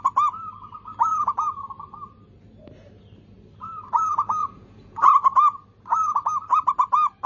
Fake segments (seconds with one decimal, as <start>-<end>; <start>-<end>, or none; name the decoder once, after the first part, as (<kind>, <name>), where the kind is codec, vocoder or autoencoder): 4.4-5.1 (vocoder, Vocos)